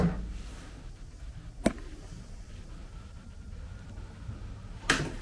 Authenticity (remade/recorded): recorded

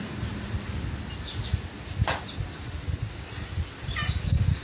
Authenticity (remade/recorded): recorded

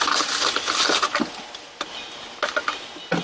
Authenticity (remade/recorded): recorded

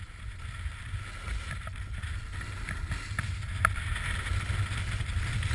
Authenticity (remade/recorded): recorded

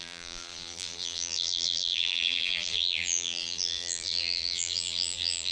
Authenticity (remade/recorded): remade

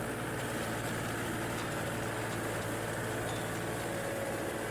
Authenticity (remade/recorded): recorded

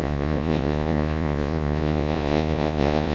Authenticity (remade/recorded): remade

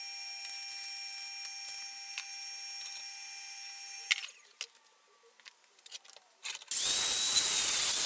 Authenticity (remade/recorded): recorded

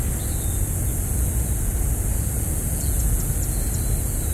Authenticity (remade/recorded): recorded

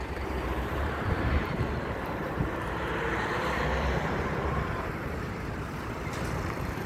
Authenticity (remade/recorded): remade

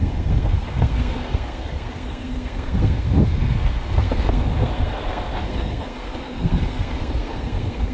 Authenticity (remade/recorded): remade